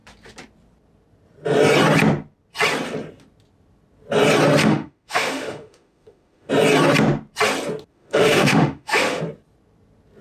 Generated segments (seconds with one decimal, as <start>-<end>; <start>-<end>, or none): 4.6-6.5; 7.9-9.2